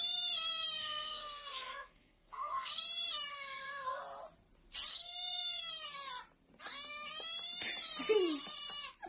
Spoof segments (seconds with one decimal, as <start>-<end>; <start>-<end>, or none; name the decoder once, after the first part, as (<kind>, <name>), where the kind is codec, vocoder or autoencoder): 0.8-2.8 (codec, SNAC); 3.3-4.0; 4.9-5.7